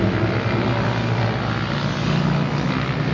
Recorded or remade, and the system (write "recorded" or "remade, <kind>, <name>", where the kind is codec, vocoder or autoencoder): recorded